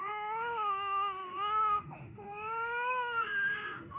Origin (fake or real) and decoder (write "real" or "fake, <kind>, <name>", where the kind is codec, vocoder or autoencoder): fake, autoencoder, DAC-VAE